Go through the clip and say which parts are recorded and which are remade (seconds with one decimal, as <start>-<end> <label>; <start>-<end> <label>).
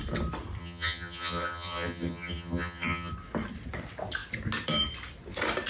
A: 0.0-0.6 recorded; 0.6-3.1 remade; 3.1-5.7 recorded